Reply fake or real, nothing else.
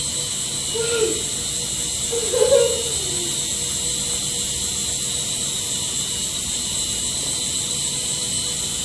real